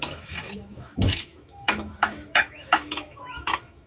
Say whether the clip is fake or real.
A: fake